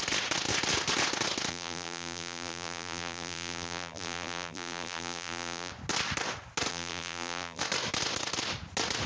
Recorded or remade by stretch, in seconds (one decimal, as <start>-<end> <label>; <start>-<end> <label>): 0.0-1.5 recorded; 1.5-5.7 remade; 5.7-6.7 recorded; 6.7-7.6 remade; 7.6-9.1 recorded